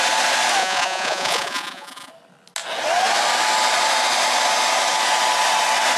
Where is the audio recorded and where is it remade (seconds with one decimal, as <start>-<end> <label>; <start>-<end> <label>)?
0.0-0.6 recorded; 0.6-2.1 remade; 2.1-6.0 recorded